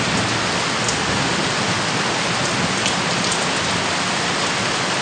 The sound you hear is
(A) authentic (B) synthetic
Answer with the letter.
A